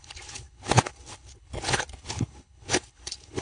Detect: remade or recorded remade